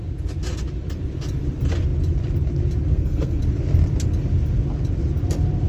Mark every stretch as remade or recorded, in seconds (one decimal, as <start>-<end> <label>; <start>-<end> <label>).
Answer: 0.0-2.9 recorded; 2.9-3.4 remade; 3.4-5.7 recorded